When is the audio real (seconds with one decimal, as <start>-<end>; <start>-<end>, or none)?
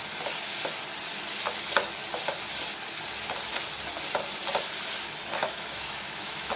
0.0-5.4